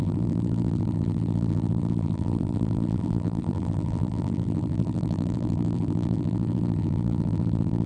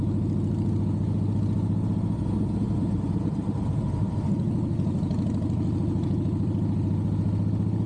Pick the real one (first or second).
second